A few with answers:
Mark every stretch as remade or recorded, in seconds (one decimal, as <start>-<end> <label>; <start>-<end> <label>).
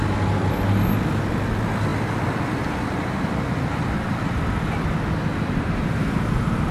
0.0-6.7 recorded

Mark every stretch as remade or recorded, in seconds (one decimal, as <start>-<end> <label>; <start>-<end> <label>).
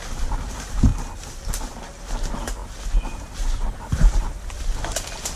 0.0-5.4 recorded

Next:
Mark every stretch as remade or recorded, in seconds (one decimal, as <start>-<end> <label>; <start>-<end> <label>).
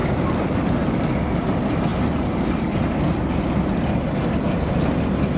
0.0-1.9 recorded; 1.9-2.8 remade; 2.8-5.4 recorded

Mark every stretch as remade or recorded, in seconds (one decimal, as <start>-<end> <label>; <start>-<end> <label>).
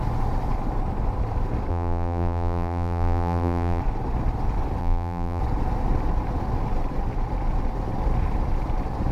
0.0-1.7 recorded; 1.7-3.8 remade; 3.8-4.8 recorded; 4.8-5.4 remade; 5.4-9.1 recorded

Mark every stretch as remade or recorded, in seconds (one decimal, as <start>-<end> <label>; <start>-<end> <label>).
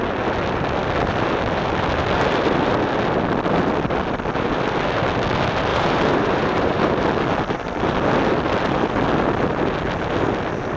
0.0-5.7 recorded; 5.7-7.0 remade; 7.0-10.8 recorded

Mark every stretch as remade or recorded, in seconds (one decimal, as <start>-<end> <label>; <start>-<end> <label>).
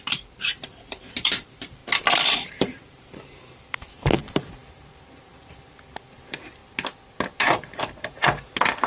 0.0-6.6 remade; 6.6-7.3 recorded; 7.3-8.9 remade